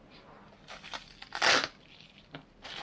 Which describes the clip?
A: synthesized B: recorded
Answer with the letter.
B